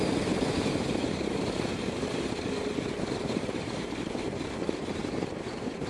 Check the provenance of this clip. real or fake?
fake